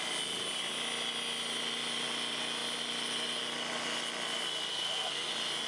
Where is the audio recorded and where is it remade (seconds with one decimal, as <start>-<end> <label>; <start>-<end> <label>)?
0.0-4.7 recorded; 4.7-5.3 remade; 5.3-5.7 recorded